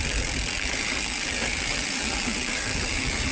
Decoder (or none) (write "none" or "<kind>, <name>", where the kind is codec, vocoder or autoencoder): vocoder, BigVGAN v2